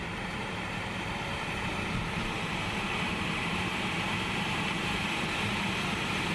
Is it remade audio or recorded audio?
remade